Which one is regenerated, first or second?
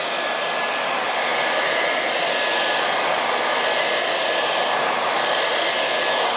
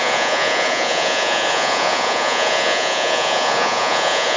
second